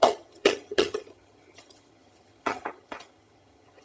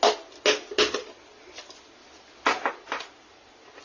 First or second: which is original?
second